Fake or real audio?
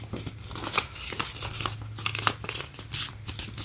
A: real